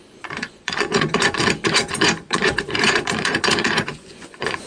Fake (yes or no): yes